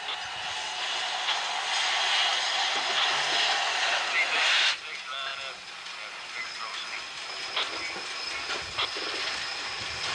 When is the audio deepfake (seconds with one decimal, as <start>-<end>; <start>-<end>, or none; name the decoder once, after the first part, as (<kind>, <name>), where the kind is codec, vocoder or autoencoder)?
none